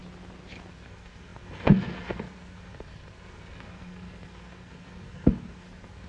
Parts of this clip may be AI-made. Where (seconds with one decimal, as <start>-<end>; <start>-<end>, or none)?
0.7-6.1